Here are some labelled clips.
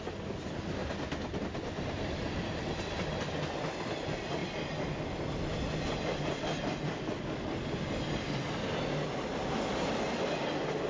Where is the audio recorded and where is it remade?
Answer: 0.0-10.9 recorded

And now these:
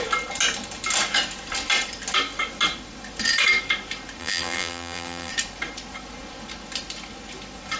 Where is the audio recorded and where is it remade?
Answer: 0.0-4.2 recorded; 4.2-5.3 remade; 5.3-7.8 recorded